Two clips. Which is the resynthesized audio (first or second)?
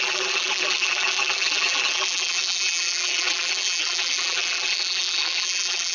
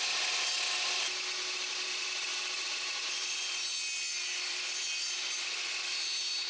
first